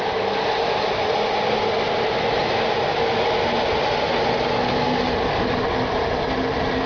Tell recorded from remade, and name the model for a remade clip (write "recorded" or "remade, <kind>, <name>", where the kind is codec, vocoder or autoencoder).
recorded